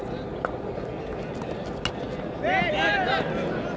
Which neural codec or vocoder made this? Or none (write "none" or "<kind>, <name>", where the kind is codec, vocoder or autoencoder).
none